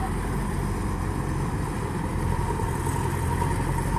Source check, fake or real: fake